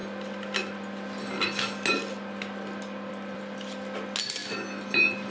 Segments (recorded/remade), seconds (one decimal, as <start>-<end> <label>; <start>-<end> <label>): 0.0-5.3 recorded